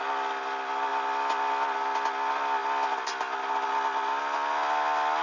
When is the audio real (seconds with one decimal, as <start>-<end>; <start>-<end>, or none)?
0.0-5.2